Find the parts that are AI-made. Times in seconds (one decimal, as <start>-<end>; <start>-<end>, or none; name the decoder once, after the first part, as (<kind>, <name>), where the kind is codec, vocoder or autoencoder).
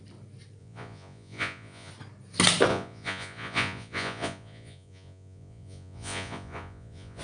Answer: 0.6-1.9 (vocoder, Vocos); 2.7-7.2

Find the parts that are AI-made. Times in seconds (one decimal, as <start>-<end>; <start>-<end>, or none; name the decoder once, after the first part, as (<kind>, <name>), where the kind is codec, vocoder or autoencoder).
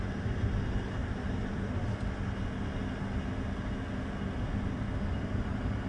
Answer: none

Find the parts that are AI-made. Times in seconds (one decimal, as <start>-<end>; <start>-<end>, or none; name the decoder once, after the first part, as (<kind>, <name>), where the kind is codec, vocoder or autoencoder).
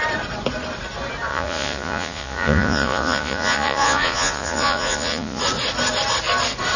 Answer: 1.3-5.4 (vocoder, Vocos)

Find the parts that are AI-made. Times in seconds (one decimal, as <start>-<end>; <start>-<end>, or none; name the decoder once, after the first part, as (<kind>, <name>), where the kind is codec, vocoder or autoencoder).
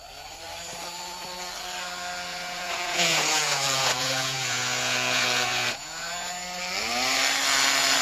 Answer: 2.3-6.3 (vocoder, Vocos)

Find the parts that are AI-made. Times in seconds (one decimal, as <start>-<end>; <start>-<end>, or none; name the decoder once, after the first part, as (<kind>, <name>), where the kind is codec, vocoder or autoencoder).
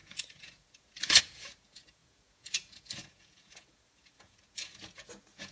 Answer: 0.0-5.5 (vocoder, Vocos)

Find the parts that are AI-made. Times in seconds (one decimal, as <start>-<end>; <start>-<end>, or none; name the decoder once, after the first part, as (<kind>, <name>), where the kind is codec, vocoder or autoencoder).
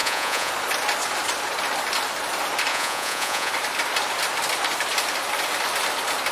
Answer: 0.0-0.5 (vocoder, Vocos); 2.7-3.5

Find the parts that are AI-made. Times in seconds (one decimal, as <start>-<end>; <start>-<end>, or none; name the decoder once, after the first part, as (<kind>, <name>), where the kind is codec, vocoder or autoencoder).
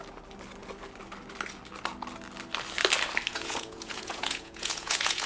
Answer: 3.3-5.3 (vocoder, Vocos)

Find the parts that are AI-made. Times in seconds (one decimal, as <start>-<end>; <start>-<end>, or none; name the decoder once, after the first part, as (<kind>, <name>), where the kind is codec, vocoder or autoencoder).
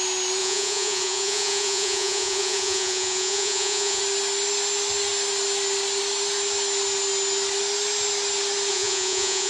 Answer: 0.4-4.0 (vocoder, Vocos); 8.7-9.5